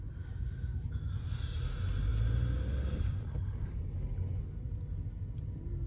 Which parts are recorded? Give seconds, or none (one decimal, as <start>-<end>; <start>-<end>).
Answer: 0.0-5.9